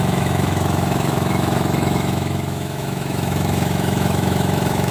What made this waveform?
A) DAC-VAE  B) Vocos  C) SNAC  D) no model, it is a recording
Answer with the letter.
A